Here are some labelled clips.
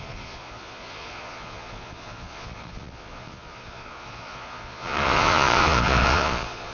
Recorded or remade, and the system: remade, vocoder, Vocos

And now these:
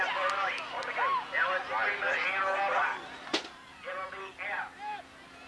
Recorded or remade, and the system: recorded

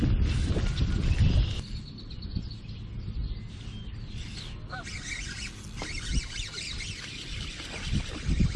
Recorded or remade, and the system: recorded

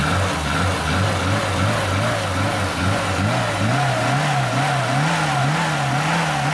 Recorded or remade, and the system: recorded